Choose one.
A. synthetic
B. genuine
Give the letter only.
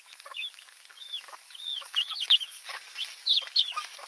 A